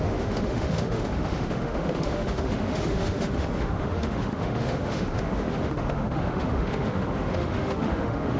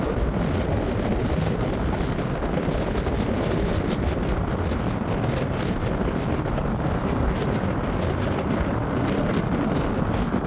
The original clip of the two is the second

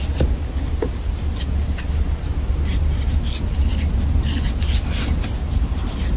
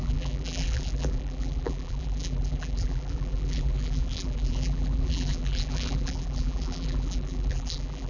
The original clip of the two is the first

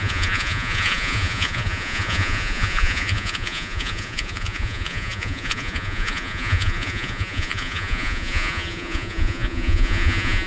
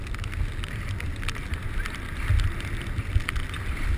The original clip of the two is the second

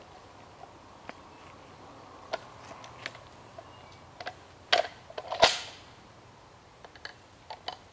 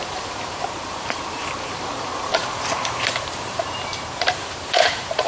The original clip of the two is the first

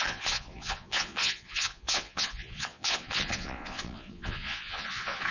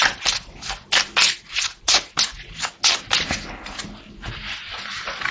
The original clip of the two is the second